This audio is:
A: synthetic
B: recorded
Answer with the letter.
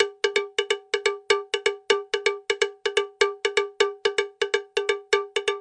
B